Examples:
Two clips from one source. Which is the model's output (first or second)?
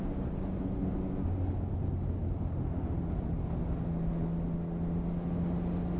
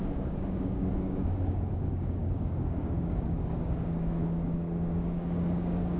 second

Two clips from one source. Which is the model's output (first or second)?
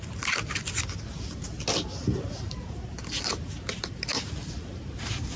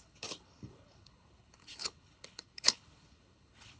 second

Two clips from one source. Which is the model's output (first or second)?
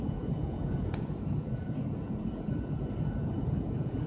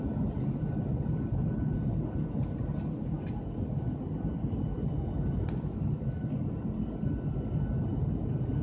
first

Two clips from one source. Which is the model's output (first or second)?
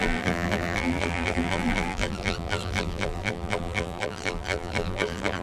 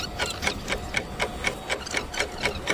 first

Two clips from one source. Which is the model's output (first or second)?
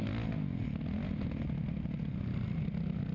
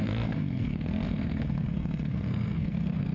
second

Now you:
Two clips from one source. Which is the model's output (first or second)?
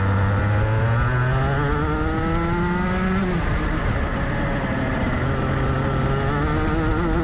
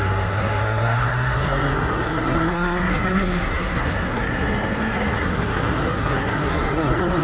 second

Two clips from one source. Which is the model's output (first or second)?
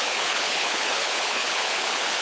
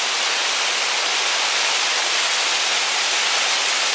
first